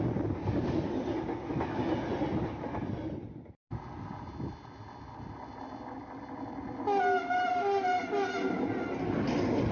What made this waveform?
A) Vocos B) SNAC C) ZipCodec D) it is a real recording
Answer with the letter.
D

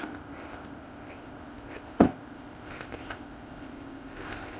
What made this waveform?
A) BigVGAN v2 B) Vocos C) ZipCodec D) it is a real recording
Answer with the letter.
C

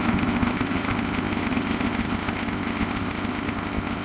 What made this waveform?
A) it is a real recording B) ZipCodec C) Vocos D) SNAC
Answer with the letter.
B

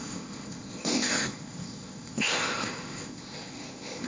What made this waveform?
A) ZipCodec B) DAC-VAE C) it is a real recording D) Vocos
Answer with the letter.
A